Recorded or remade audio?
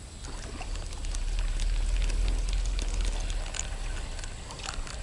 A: recorded